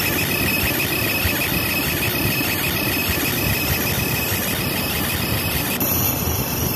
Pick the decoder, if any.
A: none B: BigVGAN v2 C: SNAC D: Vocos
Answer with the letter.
A